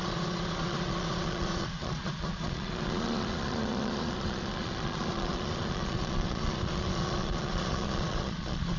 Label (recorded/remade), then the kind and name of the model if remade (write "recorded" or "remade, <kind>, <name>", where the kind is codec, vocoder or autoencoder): remade, vocoder, Vocos